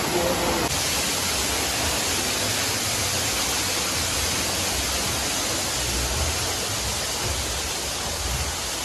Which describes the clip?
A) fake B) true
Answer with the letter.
B